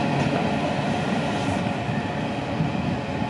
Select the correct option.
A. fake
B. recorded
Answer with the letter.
B